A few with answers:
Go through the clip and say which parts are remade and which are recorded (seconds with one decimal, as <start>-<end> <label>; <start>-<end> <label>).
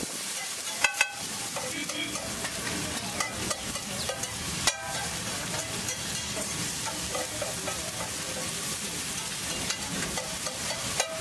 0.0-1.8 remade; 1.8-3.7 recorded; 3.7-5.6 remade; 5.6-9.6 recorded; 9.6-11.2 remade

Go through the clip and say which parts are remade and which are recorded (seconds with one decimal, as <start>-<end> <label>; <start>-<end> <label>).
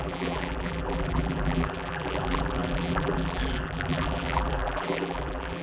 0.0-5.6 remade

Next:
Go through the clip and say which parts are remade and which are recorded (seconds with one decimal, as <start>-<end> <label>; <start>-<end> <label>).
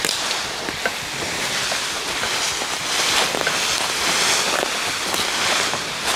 0.0-6.2 recorded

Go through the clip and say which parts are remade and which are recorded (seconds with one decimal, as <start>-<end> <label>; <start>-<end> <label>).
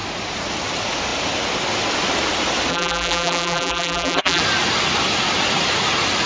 0.0-2.7 recorded; 2.7-4.4 remade; 4.4-6.3 recorded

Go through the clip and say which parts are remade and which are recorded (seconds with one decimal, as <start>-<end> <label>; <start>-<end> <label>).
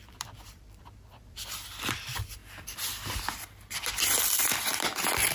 0.0-2.4 remade; 2.4-3.9 recorded; 3.9-5.3 remade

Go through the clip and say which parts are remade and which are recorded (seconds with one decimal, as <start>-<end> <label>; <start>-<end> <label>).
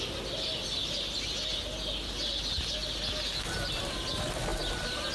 0.0-4.5 recorded; 4.5-5.1 remade